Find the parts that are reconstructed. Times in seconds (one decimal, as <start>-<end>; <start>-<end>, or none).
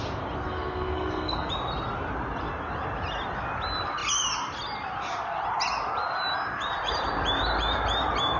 0.4-1.5